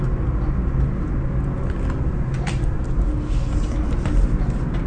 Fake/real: real